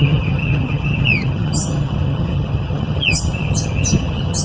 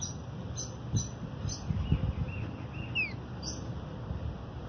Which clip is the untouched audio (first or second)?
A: second